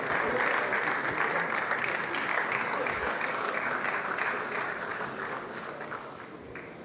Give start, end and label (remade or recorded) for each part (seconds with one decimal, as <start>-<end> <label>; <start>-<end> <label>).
0.0-2.3 recorded; 2.3-3.7 remade; 3.7-4.9 recorded; 4.9-6.3 remade; 6.3-6.8 recorded